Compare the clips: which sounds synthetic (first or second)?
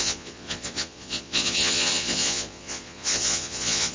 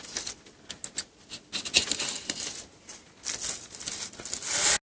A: first